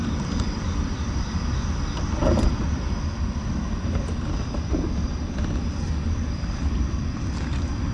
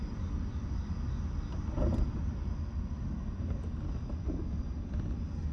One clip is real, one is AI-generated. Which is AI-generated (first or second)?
first